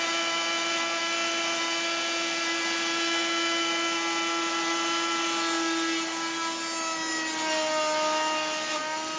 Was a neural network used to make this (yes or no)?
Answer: no